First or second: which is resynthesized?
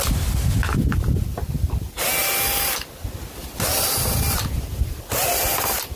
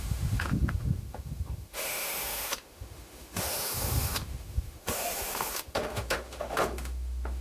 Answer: second